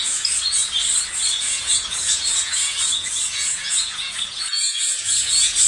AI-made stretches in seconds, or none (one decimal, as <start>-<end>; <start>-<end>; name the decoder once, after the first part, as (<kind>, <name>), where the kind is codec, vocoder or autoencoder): 0.0-0.6 (vocoder, Vocos); 1.3-5.7